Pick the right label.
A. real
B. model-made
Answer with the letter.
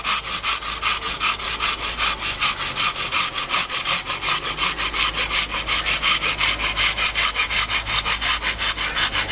A